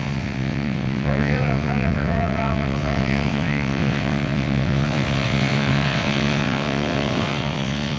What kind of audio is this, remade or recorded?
remade